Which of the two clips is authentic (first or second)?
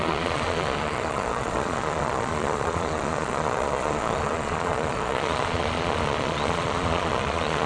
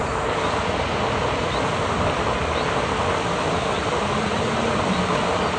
second